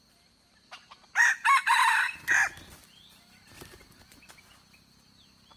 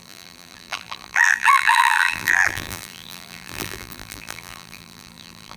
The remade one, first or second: second